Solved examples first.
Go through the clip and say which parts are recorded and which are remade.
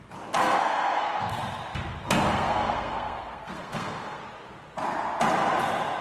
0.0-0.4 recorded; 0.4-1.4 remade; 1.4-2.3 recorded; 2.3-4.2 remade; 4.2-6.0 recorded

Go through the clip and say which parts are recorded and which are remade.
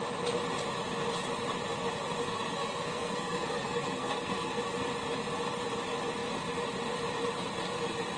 0.0-2.2 recorded; 2.2-4.6 remade; 4.6-8.2 recorded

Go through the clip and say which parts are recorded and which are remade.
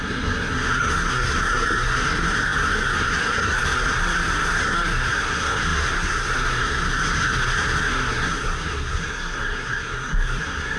0.0-10.8 remade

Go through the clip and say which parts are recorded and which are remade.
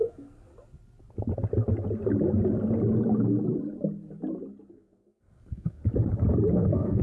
0.0-0.5 remade; 0.5-4.7 recorded; 4.7-5.8 remade; 5.8-6.5 recorded; 6.5-7.0 remade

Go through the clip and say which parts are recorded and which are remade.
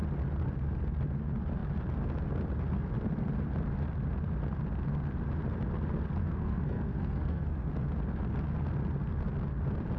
0.0-6.2 recorded; 6.2-7.7 remade; 7.7-10.0 recorded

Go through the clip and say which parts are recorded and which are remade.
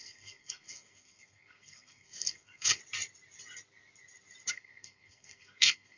0.0-2.8 remade; 2.8-4.5 recorded; 4.5-6.0 remade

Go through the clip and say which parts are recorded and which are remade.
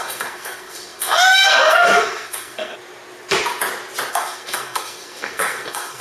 0.0-2.7 remade; 2.7-4.1 recorded; 4.1-6.0 remade